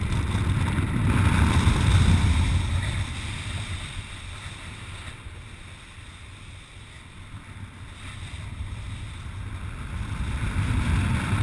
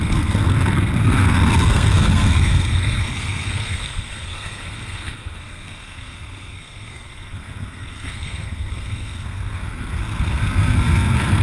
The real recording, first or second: first